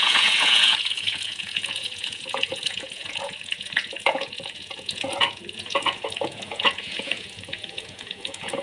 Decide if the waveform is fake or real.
fake